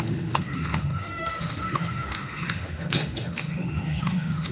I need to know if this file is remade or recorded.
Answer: remade